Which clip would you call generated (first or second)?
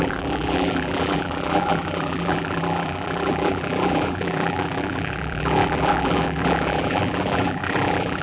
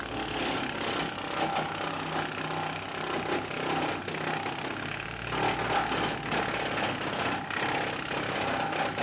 first